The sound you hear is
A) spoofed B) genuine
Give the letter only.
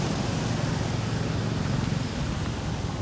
B